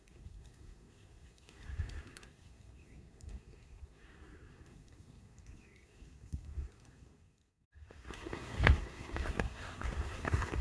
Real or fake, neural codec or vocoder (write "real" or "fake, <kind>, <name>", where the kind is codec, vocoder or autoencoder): fake, codec, SNAC